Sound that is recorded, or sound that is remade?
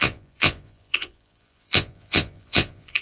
remade